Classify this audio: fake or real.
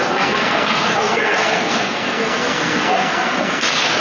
fake